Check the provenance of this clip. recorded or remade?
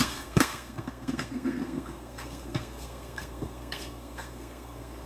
remade